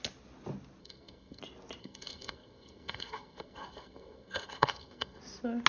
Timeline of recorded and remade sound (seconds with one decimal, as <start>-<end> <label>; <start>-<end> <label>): 0.0-0.8 recorded; 0.8-1.4 remade; 1.4-1.8 recorded; 1.8-5.2 remade; 5.2-5.7 recorded